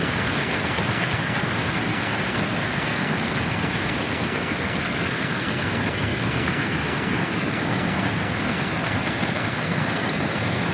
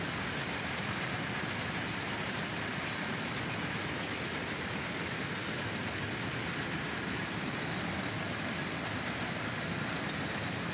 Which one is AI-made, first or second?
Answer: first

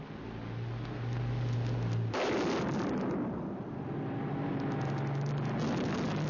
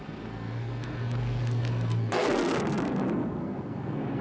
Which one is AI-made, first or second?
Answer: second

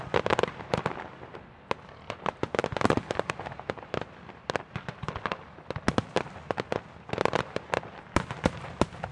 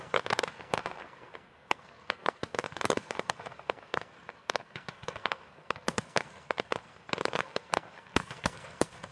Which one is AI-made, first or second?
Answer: second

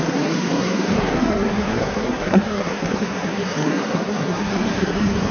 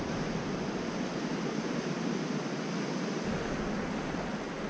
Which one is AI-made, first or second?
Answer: first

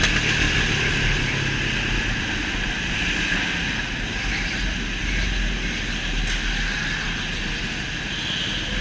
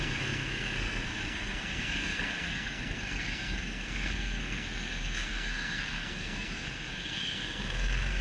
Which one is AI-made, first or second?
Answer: second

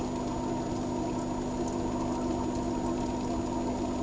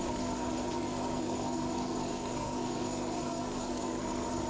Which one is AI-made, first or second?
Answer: second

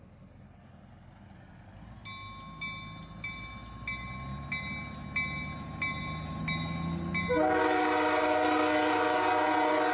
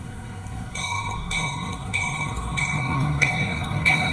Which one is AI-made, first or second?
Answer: second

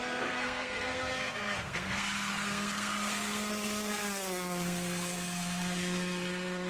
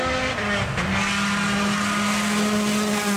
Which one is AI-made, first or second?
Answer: first